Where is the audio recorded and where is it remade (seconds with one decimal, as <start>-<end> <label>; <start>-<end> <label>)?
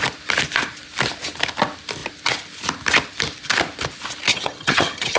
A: 0.0-4.3 recorded; 4.3-5.2 remade